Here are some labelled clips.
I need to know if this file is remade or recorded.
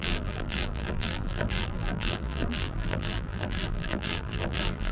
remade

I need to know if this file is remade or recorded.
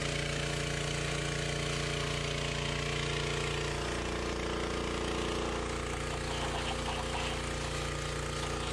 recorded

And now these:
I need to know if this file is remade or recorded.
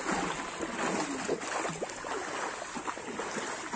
recorded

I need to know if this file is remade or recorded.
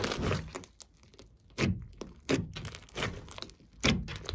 recorded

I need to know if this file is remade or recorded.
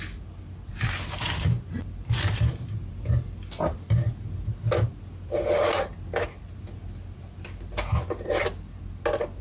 recorded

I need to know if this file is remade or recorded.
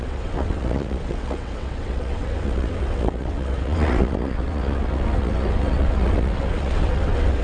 remade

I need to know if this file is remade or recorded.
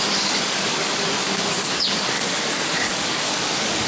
remade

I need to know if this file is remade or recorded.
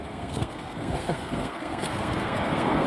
remade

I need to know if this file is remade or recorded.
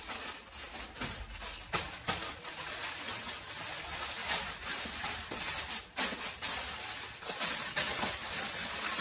recorded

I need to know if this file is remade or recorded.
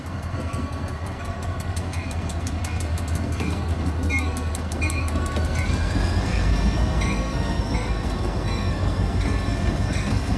remade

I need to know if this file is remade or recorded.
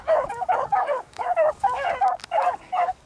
remade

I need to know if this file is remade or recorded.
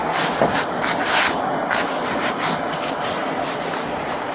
recorded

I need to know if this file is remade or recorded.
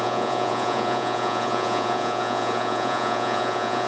remade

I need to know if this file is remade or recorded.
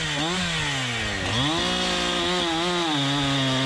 recorded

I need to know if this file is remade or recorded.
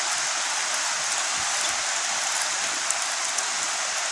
recorded